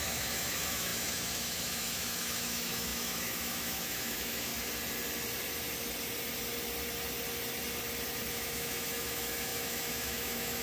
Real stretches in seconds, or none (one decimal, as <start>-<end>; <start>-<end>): 4.5-8.3